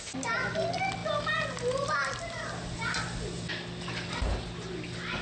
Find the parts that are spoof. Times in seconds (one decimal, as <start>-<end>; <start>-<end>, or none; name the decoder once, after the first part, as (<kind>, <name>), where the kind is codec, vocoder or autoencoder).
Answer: none